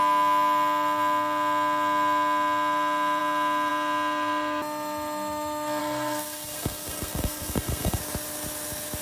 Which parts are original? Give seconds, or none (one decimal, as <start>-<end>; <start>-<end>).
0.0-5.8; 8.0-9.0